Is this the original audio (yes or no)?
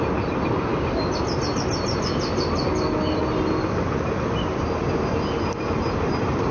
yes